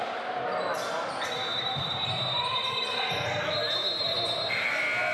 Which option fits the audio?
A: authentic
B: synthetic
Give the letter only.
A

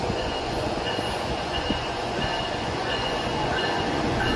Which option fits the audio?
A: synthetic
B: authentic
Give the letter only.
A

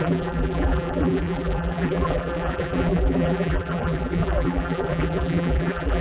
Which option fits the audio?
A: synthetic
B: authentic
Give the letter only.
A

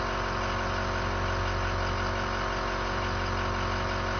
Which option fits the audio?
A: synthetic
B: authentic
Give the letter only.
B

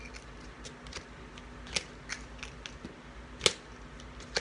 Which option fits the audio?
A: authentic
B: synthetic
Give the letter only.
A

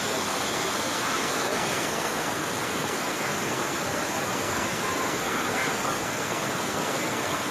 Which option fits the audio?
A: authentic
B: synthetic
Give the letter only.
B